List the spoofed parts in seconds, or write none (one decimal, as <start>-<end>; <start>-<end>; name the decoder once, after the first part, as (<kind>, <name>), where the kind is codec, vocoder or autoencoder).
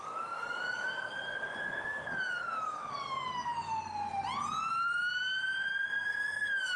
0.0-3.5 (codec, DAC); 5.7-6.8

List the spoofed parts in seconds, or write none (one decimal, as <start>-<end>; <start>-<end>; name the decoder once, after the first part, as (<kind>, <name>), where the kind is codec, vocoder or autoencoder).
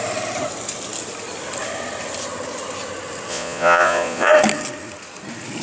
3.3-4.3 (vocoder, Vocos)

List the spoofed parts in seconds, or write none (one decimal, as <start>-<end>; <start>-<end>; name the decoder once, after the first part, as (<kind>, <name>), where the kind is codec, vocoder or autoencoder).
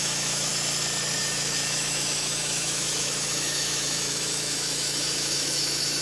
0.0-0.5 (autoencoder, DAC-VAE); 1.2-6.0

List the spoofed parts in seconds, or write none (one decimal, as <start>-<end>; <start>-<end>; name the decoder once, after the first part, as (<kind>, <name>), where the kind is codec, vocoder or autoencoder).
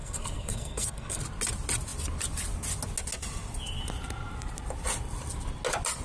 0.0-1.2 (codec, SNAC)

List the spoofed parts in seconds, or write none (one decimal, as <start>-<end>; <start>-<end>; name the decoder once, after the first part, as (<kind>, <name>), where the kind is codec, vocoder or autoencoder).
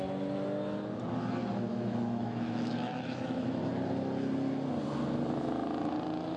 1.7-3.7 (autoencoder, DAC-VAE)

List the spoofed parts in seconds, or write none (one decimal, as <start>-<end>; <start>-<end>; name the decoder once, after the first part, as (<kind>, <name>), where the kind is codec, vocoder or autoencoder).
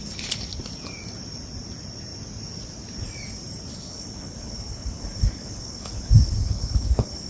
3.7-7.3 (codec, HILCodec)